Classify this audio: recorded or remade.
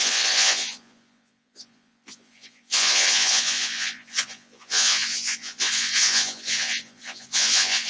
remade